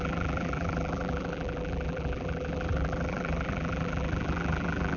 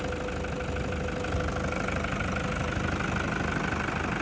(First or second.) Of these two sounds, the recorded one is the second